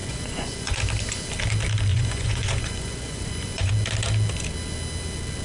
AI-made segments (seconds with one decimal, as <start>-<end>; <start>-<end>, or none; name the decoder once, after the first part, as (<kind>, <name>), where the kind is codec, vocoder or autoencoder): 0.0-0.8 (vocoder, Vocos); 1.9-3.7